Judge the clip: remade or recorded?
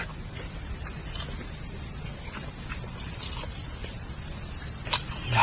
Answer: recorded